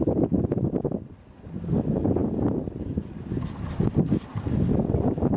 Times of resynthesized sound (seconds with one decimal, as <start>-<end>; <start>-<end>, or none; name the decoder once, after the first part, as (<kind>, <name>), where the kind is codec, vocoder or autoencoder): 2.2-4.1 (vocoder, BigVGAN v2)